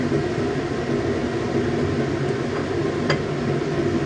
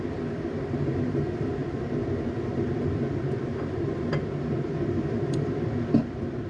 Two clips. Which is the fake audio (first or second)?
second